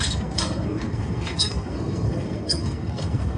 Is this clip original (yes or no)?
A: no